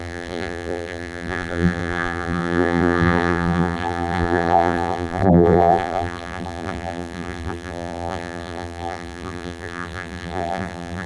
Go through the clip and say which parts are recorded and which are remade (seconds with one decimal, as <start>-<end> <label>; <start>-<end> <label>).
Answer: 0.0-11.1 remade